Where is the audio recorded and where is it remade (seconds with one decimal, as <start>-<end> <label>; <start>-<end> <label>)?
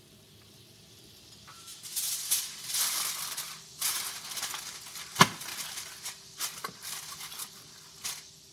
0.0-8.5 recorded